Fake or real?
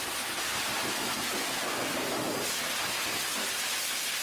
real